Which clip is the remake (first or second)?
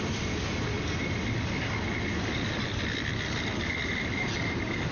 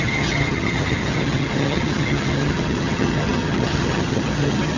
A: second